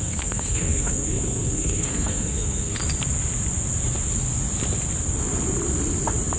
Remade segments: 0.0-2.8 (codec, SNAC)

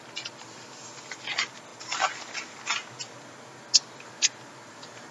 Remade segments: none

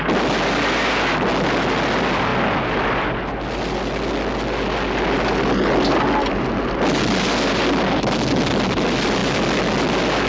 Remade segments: none